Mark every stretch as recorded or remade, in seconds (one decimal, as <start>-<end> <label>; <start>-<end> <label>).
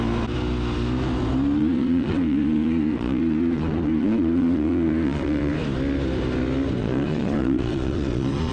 0.0-1.6 recorded; 1.6-5.5 remade; 5.5-6.8 recorded; 6.8-8.5 remade